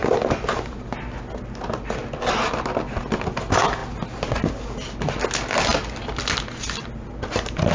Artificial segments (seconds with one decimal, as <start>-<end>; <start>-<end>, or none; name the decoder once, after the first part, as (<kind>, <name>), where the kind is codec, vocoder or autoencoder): none

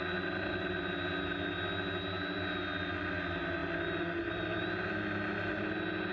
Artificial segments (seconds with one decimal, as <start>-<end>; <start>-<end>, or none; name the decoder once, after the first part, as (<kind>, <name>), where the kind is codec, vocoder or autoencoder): none

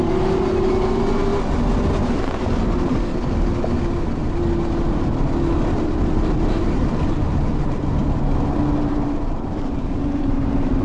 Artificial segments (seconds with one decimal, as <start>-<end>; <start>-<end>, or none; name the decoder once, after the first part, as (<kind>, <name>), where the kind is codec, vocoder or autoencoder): 0.0-1.3 (vocoder, BigVGAN v2); 6.0-8.0; 8.8-10.8